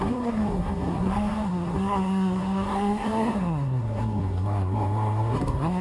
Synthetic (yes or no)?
yes